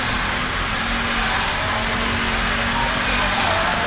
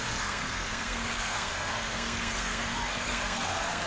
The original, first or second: first